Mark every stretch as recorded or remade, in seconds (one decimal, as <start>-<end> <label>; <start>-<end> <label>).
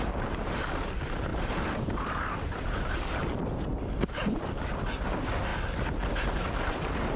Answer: 0.0-1.3 recorded; 1.3-4.8 remade; 4.8-7.2 recorded